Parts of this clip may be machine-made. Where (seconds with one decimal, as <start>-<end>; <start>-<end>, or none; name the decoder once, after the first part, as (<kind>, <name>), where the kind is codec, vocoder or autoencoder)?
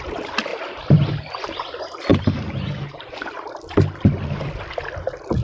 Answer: 0.5-1.3 (vocoder, BigVGAN v2); 2.1-3.5